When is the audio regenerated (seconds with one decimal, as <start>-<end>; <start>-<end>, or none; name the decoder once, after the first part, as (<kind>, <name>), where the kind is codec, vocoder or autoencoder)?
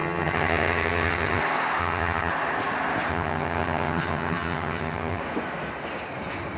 0.0-1.4 (vocoder, HiFi-GAN); 1.8-2.3; 3.1-5.2